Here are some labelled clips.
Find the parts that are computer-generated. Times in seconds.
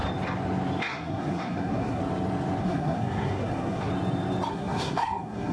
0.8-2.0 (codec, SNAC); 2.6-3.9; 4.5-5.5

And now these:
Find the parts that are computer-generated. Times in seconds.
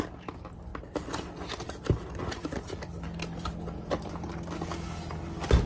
none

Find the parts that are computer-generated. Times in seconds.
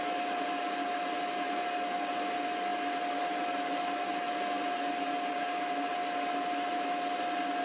none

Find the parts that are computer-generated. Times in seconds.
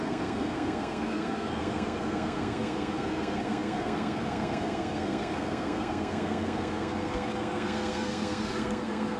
0.0-9.2 (codec, SNAC)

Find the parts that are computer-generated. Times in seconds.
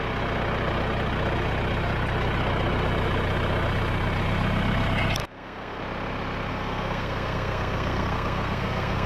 5.2-5.8 (codec, SNAC); 6.5-9.1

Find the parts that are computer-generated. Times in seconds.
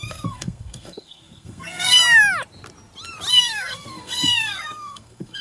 0.0-2.0 (codec, SNAC); 3.3-5.4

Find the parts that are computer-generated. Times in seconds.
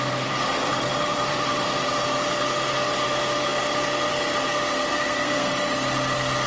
4.9-5.5 (codec, SNAC)